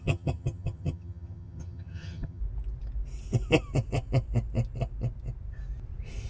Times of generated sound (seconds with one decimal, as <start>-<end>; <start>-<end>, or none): 0.0-2.4